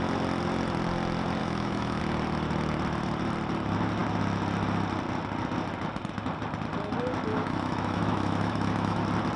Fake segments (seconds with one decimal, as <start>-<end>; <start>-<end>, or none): 1.4-2.0; 7.3-9.0